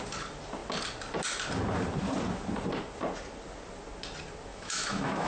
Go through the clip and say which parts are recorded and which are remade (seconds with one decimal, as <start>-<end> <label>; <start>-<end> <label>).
0.0-4.5 recorded; 4.5-5.3 remade